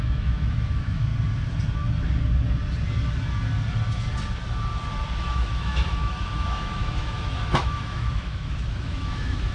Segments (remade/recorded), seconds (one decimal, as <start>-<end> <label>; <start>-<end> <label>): 0.0-1.1 remade; 1.1-5.2 recorded; 5.2-9.5 remade